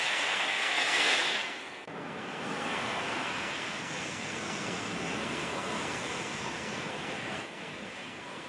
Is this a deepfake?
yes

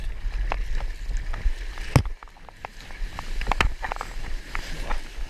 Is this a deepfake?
no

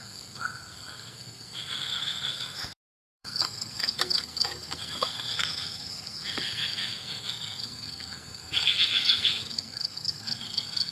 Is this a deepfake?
yes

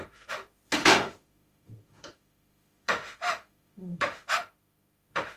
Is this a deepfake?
yes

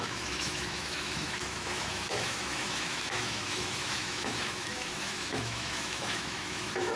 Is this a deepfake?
yes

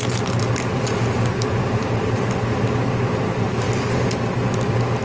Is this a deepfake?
no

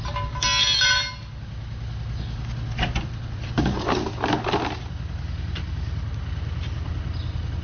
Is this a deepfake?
no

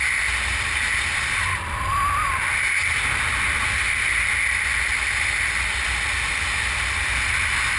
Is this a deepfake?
no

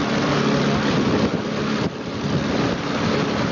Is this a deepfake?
no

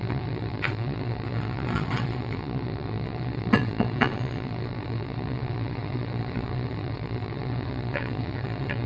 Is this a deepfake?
yes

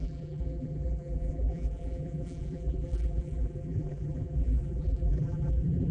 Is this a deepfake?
yes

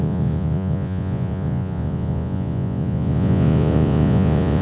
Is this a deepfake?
yes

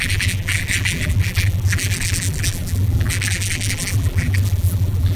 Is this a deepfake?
yes